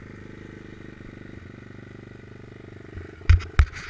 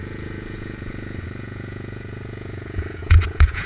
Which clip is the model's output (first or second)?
second